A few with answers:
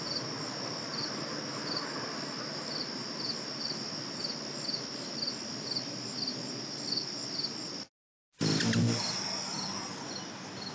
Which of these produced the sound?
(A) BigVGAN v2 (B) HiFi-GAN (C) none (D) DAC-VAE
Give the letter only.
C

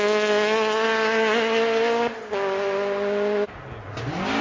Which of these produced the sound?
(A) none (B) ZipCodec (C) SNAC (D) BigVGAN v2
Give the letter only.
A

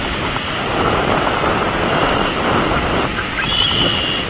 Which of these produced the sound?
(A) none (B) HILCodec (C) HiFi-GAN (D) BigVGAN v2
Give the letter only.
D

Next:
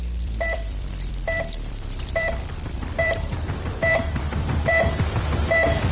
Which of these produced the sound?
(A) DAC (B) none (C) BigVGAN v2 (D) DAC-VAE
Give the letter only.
C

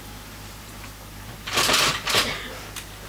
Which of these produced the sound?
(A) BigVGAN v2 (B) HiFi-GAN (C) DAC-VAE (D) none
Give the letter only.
D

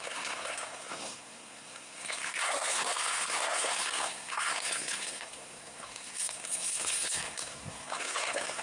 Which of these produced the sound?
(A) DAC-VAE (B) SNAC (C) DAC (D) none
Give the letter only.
B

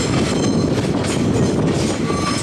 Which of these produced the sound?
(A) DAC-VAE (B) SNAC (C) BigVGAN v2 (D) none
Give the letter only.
D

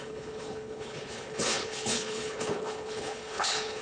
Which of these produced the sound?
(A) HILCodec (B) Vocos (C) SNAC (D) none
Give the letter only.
A